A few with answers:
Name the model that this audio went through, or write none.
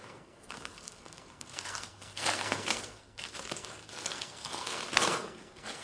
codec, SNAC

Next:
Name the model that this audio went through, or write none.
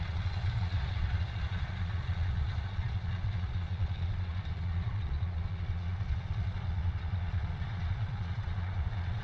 vocoder, Vocos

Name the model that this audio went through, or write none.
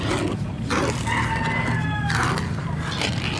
none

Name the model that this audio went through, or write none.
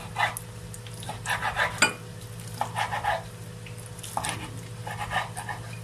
none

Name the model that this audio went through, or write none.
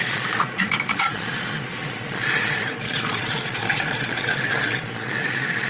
vocoder, Vocos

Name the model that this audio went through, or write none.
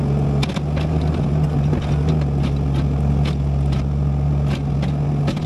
none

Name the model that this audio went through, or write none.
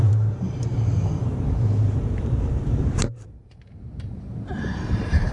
vocoder, BigVGAN v2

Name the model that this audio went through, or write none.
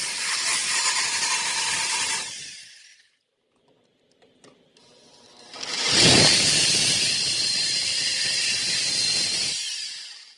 vocoder, BigVGAN v2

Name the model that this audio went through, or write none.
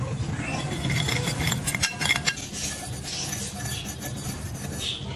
none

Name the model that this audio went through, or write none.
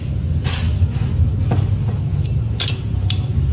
none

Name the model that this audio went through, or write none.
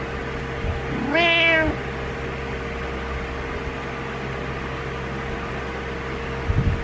none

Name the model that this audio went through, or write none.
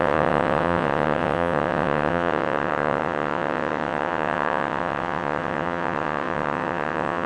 vocoder, WaveNeXt